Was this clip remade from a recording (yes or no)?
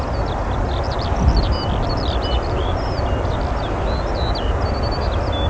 no